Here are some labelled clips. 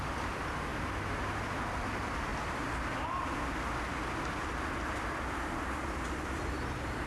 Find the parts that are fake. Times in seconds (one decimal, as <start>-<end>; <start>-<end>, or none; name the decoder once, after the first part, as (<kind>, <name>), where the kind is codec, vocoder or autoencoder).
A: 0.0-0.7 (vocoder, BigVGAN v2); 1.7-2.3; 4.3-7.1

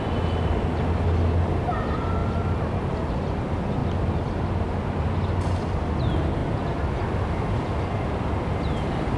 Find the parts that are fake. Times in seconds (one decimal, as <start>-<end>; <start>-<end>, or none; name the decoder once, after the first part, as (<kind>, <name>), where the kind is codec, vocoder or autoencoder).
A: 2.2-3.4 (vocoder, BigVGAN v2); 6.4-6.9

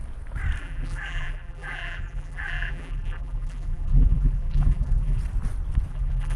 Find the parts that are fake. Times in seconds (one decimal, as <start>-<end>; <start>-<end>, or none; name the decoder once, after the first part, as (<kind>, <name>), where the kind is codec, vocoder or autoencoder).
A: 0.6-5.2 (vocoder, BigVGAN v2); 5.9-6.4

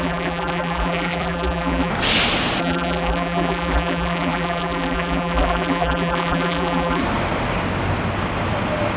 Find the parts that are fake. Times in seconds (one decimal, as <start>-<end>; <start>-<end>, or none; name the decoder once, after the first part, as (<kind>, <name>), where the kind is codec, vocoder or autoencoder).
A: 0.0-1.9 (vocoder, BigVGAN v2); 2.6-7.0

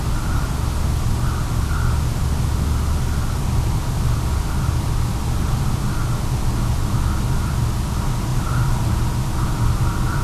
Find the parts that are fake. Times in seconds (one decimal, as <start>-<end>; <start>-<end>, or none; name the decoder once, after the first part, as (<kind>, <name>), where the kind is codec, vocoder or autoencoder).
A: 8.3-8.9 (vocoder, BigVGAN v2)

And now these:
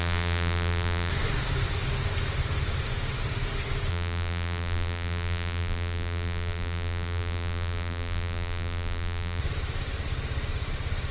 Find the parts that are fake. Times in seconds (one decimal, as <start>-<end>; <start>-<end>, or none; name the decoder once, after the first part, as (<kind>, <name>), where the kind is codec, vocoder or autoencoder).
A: 0.0-1.1 (vocoder, BigVGAN v2); 3.9-9.4

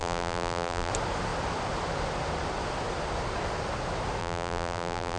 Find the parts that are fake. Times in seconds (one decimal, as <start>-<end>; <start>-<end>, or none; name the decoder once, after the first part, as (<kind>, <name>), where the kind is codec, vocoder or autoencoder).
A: 0.0-0.9 (vocoder, BigVGAN v2); 4.2-5.2

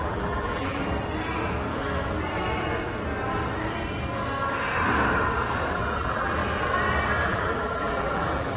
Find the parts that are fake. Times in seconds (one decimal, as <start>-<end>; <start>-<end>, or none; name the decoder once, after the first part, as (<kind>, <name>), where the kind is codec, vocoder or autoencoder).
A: 0.0-0.8 (vocoder, BigVGAN v2); 5.7-6.4; 7.3-8.6